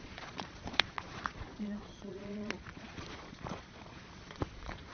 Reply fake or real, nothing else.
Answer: fake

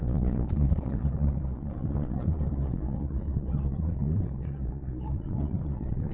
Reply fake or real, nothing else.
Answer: fake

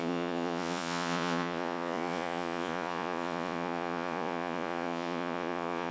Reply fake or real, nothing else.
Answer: fake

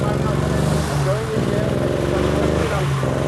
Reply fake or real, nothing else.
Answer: real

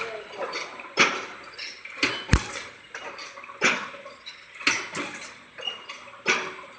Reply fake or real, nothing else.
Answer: real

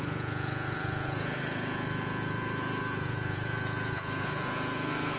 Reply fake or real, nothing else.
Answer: fake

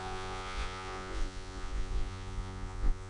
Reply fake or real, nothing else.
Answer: fake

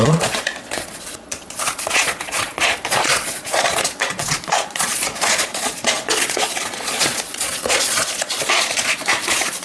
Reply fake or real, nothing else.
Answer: fake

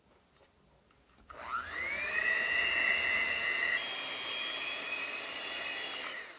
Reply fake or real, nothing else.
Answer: real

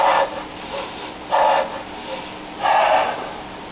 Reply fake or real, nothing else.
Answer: real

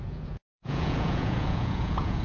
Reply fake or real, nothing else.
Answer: fake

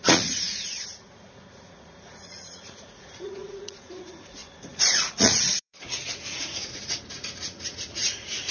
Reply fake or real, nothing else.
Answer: fake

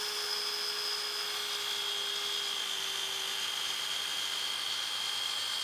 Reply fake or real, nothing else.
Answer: real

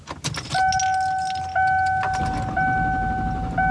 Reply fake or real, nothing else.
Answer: real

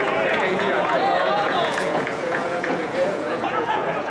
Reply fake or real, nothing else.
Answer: fake